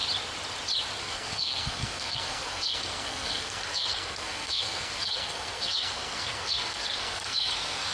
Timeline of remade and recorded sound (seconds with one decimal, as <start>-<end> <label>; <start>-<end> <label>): 0.0-1.0 recorded; 1.0-7.9 remade